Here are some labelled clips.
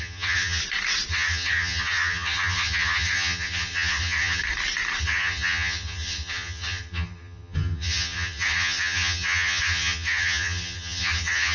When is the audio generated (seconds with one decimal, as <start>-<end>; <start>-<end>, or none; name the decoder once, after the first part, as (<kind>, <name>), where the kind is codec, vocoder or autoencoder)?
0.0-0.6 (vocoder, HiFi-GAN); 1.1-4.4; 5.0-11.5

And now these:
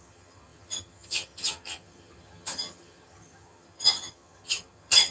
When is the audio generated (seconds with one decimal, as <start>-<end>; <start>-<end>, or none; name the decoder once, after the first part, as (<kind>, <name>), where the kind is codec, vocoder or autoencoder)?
0.0-5.1 (vocoder, HiFi-GAN)

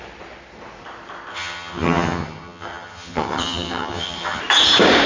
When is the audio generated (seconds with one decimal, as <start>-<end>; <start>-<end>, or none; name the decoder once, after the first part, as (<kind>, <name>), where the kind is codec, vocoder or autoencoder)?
1.3-4.4 (vocoder, HiFi-GAN)